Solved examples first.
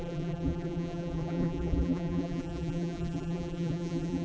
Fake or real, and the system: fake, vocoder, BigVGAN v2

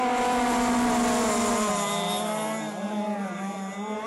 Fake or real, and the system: real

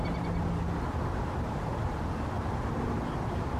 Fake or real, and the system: real